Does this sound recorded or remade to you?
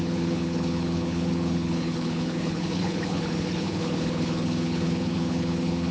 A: remade